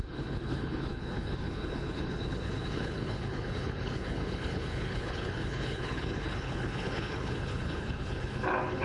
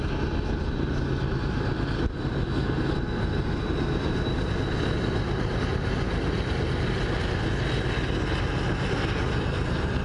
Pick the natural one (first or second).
second